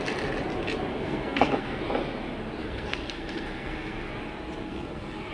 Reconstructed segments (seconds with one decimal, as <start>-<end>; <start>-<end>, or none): 0.9-1.8; 2.6-4.1; 4.6-5.3